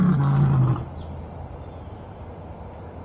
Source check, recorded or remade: recorded